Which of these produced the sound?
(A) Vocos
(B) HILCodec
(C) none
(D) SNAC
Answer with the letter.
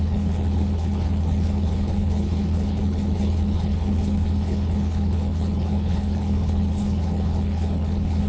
B